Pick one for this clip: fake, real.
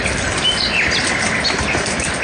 real